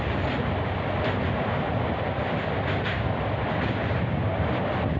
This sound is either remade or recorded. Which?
recorded